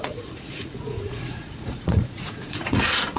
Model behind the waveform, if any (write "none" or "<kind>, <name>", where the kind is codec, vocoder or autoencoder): vocoder, Vocos